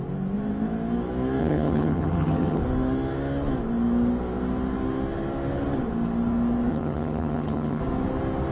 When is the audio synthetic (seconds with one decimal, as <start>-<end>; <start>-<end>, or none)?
1.4-2.6; 6.7-7.8